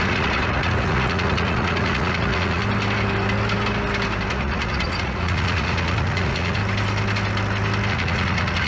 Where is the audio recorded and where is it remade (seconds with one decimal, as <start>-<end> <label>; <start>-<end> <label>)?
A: 0.0-2.6 remade; 2.6-4.3 recorded; 4.3-6.6 remade; 6.6-7.9 recorded; 7.9-8.7 remade